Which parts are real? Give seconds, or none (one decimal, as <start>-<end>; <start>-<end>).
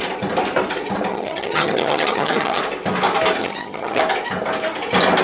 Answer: 0.0-1.1; 2.6-3.4; 4.0-5.2